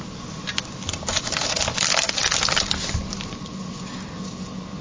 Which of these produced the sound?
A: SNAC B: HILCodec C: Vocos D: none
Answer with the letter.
D